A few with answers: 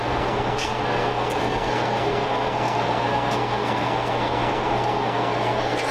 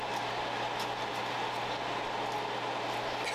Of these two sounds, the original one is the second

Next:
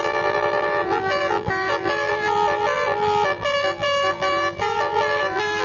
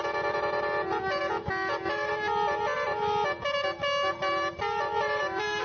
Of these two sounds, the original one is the second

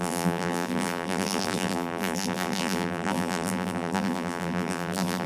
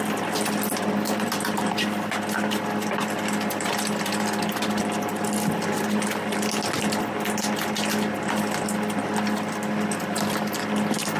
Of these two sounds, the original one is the second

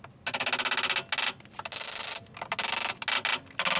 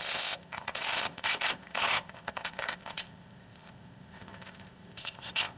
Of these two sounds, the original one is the first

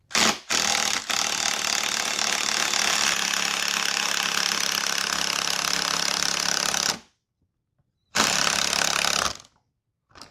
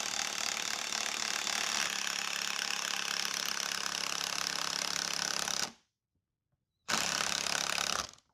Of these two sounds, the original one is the first